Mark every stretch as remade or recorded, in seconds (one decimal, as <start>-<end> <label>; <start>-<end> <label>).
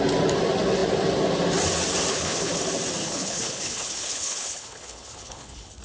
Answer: 0.0-2.1 recorded; 2.1-2.6 remade; 2.6-3.0 recorded; 3.0-5.8 remade